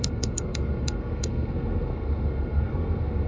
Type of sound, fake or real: fake